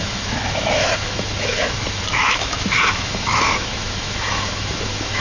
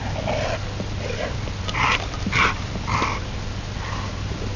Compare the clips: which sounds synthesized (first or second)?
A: first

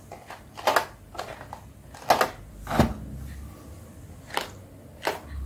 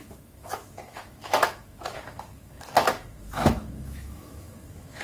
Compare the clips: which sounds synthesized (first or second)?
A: second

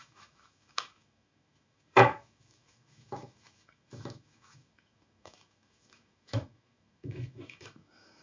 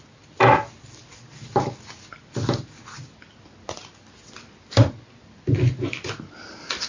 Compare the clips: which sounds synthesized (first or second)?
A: first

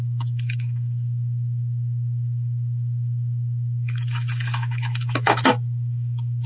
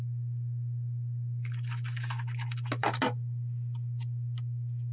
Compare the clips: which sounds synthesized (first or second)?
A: first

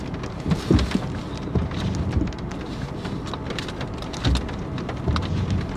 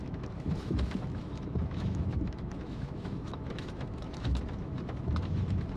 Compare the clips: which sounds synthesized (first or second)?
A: second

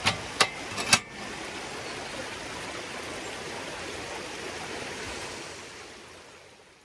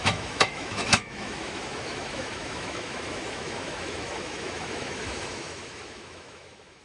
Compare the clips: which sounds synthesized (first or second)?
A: second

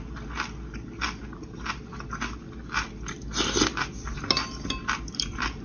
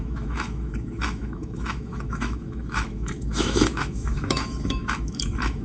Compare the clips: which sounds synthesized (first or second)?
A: second